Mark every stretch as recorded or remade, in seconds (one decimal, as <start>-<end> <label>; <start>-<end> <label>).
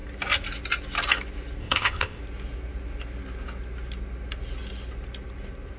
0.0-1.6 recorded; 1.6-2.2 remade; 2.2-5.8 recorded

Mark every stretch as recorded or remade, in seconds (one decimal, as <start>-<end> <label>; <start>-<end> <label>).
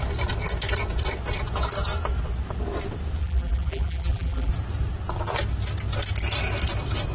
0.0-3.2 recorded; 3.2-4.5 remade; 4.5-7.1 recorded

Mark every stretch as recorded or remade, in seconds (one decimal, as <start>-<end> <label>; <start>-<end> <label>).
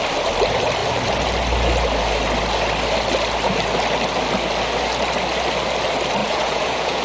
0.0-6.2 recorded; 6.2-7.0 remade